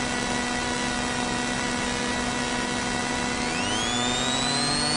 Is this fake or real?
real